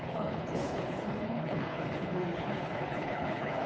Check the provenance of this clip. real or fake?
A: fake